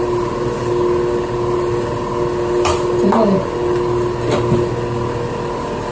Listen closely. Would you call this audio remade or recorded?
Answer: recorded